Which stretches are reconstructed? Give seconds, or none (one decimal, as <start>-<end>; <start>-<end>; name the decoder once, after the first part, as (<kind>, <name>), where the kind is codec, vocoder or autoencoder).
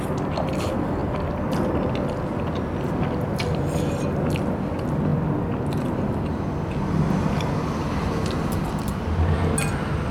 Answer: none